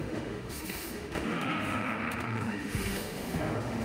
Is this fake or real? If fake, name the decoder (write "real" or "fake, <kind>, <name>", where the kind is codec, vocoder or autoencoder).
fake, autoencoder, DAC-VAE